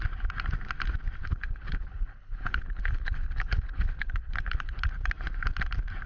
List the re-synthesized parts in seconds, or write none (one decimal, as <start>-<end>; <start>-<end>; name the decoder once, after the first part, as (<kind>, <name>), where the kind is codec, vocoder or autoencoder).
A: 1.2-4.8 (codec, HILCodec)